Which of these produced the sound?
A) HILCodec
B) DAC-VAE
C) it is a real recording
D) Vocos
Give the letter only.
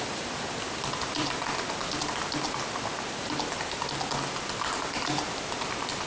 C